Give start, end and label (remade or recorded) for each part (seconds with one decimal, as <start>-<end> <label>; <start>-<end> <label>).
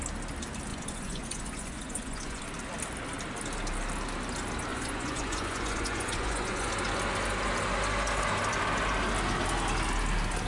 0.0-0.7 recorded; 0.7-2.4 remade; 2.4-4.7 recorded; 4.7-6.7 remade; 6.7-10.5 recorded